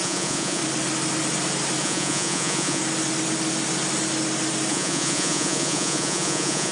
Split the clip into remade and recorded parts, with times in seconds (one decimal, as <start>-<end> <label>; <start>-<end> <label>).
0.0-0.6 remade; 0.6-1.8 recorded; 1.8-2.8 remade; 2.8-4.7 recorded; 4.7-6.7 remade